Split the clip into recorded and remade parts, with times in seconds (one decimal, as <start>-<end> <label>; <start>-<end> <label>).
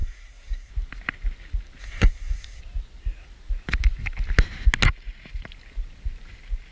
0.0-0.7 remade; 0.7-1.8 recorded; 1.8-2.6 remade; 2.6-6.7 recorded